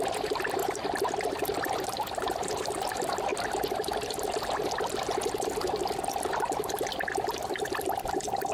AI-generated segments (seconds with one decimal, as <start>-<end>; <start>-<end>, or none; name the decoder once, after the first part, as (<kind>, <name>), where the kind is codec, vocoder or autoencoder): 0.6-2.9 (vocoder, BigVGAN v2)